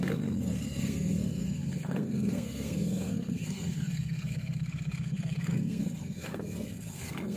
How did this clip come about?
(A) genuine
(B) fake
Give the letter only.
B